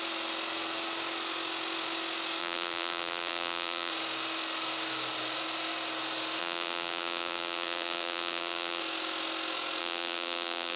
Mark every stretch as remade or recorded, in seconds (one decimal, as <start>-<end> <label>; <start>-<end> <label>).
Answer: 0.0-2.4 recorded; 2.4-3.9 remade; 3.9-6.4 recorded; 6.4-8.8 remade; 8.8-9.8 recorded; 9.8-10.8 remade